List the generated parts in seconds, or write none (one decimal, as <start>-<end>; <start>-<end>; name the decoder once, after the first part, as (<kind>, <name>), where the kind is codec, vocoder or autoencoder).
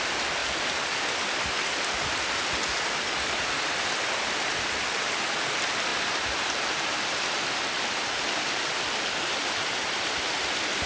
5.9-10.1 (vocoder, BigVGAN v2)